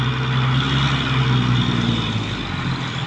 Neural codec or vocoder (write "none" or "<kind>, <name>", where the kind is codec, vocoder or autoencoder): none